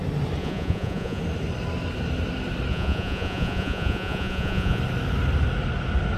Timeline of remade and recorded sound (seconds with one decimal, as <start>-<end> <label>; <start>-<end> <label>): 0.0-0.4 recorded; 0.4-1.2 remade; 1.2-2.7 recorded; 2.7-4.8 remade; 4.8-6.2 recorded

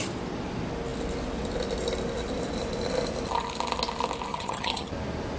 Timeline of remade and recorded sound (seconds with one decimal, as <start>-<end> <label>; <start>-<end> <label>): 0.0-4.3 recorded; 4.3-4.9 remade; 4.9-5.4 recorded

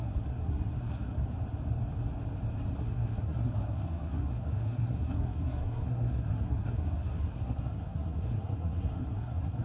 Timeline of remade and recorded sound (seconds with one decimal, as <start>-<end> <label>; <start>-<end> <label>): 0.0-1.2 remade; 1.2-2.8 recorded; 2.8-9.6 remade